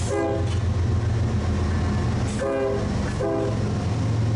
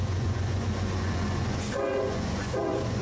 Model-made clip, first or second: second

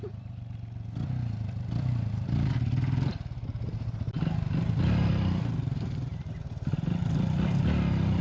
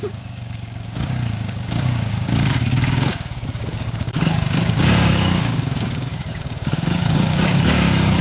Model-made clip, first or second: second